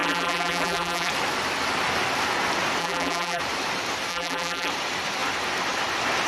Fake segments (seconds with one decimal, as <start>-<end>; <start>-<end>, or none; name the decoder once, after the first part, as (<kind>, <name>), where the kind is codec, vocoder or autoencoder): 0.0-1.1 (vocoder, BigVGAN v2); 2.8-3.4; 4.1-4.7